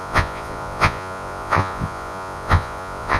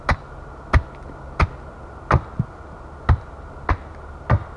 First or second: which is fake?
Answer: first